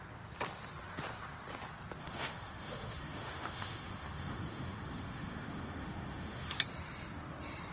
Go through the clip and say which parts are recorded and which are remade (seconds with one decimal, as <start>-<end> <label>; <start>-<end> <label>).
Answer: 0.0-2.0 recorded; 2.0-6.6 remade; 6.6-7.7 recorded